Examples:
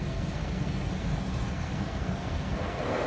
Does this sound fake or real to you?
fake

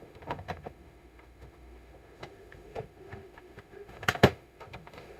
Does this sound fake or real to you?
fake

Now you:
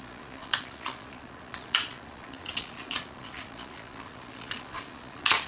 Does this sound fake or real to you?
fake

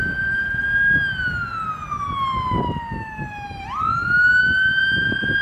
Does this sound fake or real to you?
real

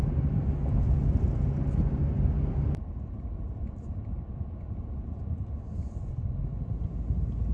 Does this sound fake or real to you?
real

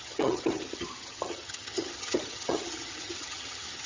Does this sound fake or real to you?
fake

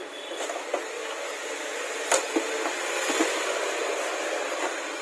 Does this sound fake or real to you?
real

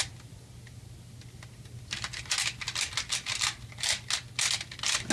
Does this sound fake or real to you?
real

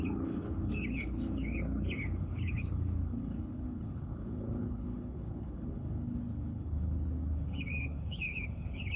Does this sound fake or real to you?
fake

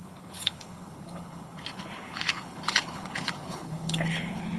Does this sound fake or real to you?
fake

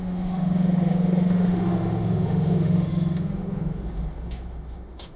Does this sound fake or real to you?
fake